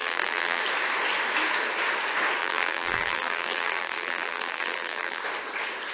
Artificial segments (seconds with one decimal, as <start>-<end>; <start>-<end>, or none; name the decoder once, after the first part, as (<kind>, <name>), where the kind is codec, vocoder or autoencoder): 0.0-0.6 (vocoder, BigVGAN v2); 2.4-5.2